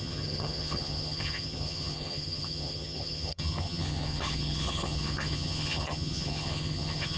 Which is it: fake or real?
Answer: fake